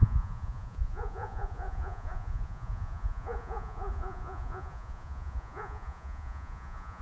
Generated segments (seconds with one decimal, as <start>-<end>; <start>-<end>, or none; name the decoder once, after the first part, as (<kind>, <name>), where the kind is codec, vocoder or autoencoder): 0.0-7.0 (vocoder, Vocos)